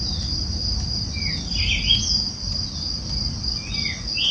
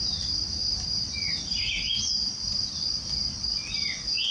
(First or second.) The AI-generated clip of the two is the second